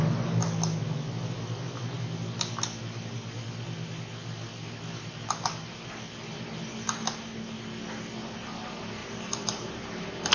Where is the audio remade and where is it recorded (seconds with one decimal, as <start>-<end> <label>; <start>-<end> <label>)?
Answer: 0.0-9.0 recorded; 9.0-10.3 remade